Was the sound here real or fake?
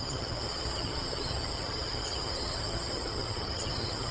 fake